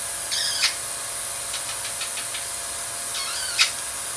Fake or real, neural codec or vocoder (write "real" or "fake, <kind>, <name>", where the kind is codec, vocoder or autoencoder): real